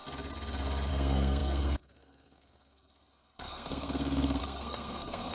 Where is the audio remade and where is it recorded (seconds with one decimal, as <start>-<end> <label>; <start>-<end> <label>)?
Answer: 0.0-0.9 recorded; 0.9-5.3 remade